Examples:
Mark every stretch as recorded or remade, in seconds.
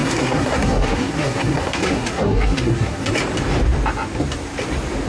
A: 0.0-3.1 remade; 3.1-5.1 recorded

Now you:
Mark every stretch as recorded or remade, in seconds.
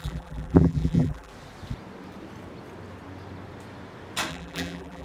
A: 0.0-1.3 remade; 1.3-4.3 recorded; 4.3-5.0 remade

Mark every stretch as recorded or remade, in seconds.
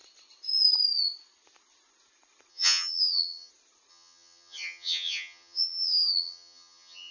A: 0.0-2.5 recorded; 2.5-3.5 remade; 3.5-3.9 recorded; 3.9-7.1 remade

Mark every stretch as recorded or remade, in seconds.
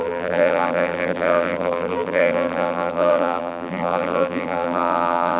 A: 0.0-5.4 remade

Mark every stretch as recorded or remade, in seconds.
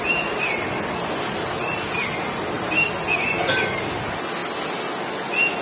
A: 0.0-5.6 recorded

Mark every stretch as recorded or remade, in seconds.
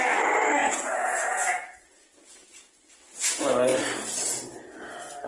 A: 0.0-0.6 recorded; 0.6-2.9 remade; 2.9-5.3 recorded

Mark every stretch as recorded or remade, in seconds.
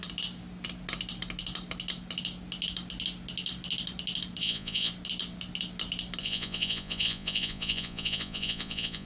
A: 0.0-4.4 recorded; 4.4-4.9 remade; 4.9-6.2 recorded; 6.2-9.1 remade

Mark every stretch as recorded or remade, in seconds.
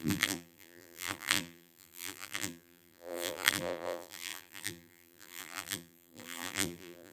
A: 0.0-7.1 remade